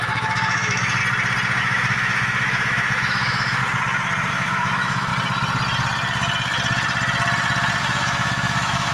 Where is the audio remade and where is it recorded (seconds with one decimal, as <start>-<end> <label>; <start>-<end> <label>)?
0.0-1.0 remade; 1.0-1.6 recorded; 1.6-3.6 remade; 3.6-4.3 recorded; 4.3-5.1 remade; 5.1-7.8 recorded; 7.8-8.9 remade